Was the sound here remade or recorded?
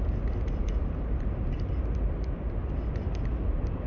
recorded